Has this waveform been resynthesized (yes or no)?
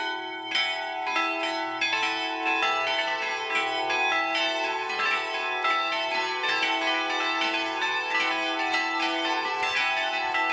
no